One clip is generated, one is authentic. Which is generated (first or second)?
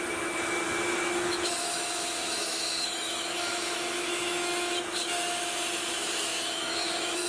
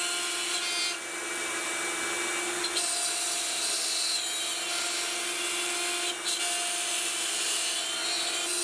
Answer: first